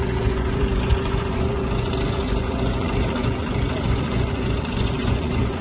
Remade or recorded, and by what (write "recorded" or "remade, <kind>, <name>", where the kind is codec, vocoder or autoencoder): remade, vocoder, Vocos